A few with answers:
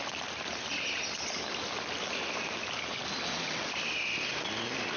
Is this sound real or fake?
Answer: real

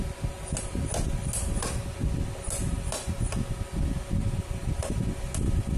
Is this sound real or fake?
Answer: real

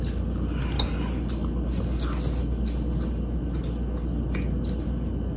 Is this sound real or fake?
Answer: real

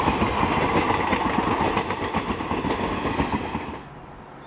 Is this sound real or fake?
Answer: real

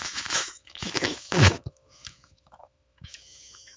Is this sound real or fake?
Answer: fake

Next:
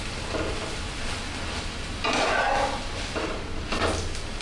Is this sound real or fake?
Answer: real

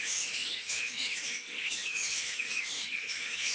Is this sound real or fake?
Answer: fake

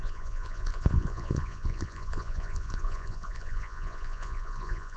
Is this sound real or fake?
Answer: fake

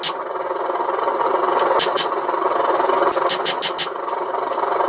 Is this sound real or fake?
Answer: real